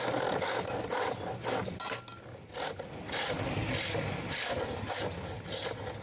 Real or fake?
real